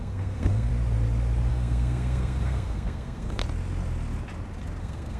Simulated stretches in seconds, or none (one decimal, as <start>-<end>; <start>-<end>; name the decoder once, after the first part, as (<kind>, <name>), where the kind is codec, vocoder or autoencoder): 0.0-0.7 (codec, SNAC); 1.5-3.4; 4.8-5.2